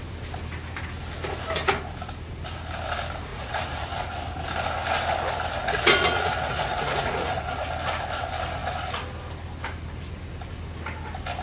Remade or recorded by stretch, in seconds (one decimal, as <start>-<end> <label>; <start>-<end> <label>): 0.0-3.3 recorded; 3.3-4.1 remade; 4.1-5.6 recorded; 5.6-7.7 remade; 7.7-11.4 recorded